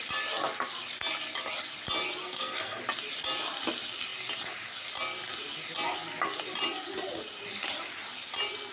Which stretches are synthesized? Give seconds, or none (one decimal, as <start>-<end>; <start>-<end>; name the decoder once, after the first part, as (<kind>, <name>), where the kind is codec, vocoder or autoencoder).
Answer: 2.2-2.8 (codec, SNAC)